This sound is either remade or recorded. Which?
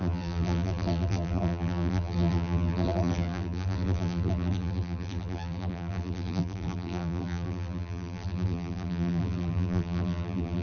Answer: remade